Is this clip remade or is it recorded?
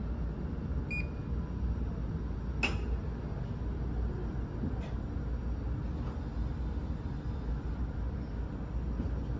recorded